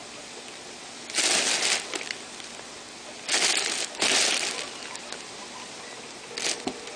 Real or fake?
real